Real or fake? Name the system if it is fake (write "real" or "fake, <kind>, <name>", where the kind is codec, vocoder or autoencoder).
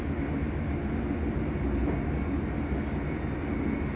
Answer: real